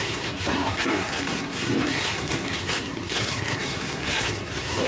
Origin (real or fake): fake